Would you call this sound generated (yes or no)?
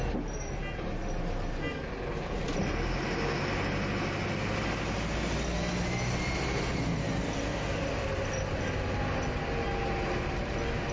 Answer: no